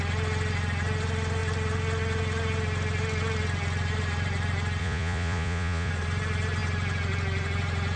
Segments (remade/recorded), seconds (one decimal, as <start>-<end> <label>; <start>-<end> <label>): 0.0-4.8 recorded; 4.8-5.9 remade; 5.9-8.0 recorded

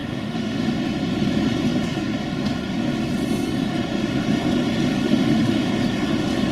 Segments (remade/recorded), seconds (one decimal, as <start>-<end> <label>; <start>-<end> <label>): 0.0-0.7 remade; 0.7-5.0 recorded; 5.0-5.7 remade; 5.7-6.5 recorded

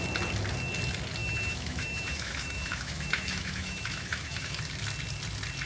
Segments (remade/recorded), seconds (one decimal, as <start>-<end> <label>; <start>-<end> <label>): 0.0-1.2 recorded; 1.2-4.6 remade; 4.6-5.7 recorded

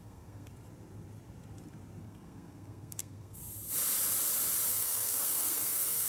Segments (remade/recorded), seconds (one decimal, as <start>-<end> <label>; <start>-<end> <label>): 0.0-0.5 remade; 0.5-2.0 recorded; 2.0-3.4 remade; 3.4-4.7 recorded; 4.7-6.1 remade

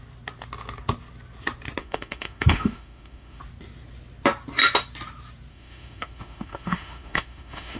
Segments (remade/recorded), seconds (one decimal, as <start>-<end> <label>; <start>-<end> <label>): 0.0-1.8 recorded; 1.8-3.4 remade; 3.4-5.5 recorded; 5.5-7.8 remade

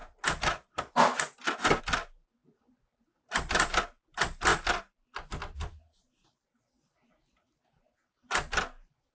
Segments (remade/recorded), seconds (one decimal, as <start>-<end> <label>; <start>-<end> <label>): 0.0-9.1 recorded